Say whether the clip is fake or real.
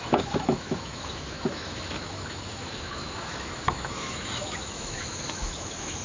fake